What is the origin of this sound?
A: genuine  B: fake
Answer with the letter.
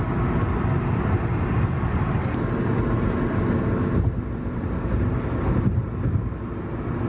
A